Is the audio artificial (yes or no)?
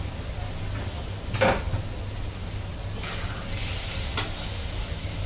no